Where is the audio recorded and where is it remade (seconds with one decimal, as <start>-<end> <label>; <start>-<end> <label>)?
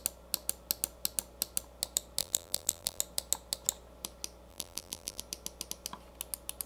0.0-2.2 recorded; 2.2-3.0 remade; 3.0-4.5 recorded; 4.5-5.2 remade; 5.2-6.7 recorded